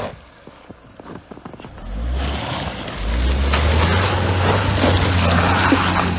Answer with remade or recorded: recorded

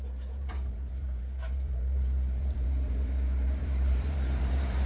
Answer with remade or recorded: remade